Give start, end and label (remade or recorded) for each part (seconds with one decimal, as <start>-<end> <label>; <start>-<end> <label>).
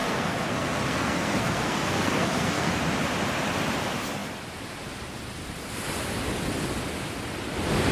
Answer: 0.0-2.7 remade; 2.7-7.9 recorded